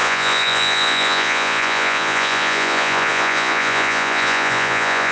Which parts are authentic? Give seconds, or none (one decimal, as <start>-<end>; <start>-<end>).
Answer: none

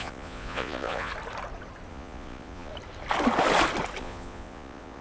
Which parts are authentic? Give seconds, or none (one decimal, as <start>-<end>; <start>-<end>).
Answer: 1.1-1.9; 2.7-4.0

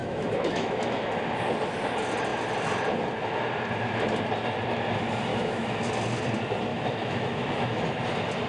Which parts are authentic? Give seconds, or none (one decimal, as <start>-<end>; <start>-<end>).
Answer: 1.1-5.3; 5.9-6.7; 7.8-8.5